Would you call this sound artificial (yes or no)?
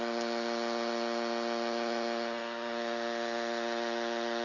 no